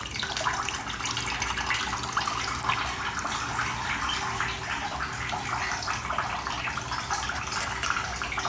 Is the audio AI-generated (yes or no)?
no